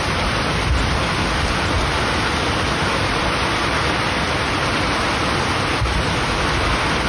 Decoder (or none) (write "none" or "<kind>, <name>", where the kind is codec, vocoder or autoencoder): none